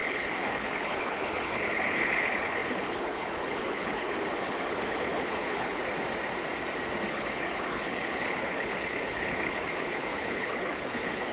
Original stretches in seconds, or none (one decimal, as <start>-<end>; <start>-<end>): 5.8-7.1